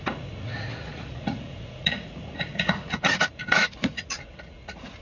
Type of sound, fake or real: fake